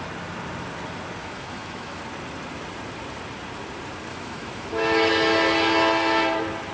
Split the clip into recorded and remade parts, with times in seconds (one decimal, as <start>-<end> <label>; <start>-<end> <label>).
0.0-1.2 recorded; 1.2-2.0 remade; 2.0-4.1 recorded; 4.1-5.1 remade; 5.1-6.7 recorded